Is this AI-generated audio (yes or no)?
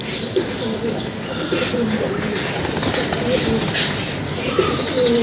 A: no